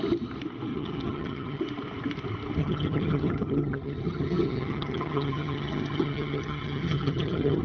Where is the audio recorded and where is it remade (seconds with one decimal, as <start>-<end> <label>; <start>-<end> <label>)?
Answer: 0.0-0.7 recorded; 0.7-1.6 remade; 1.6-2.6 recorded; 2.6-7.6 remade